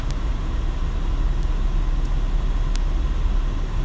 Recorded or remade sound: recorded